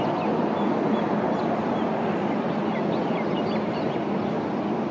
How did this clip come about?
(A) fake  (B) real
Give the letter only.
B